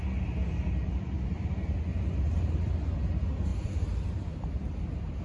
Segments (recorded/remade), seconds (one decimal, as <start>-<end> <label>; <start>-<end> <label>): 0.0-1.9 recorded; 1.9-2.7 remade; 2.7-3.5 recorded; 3.5-5.2 remade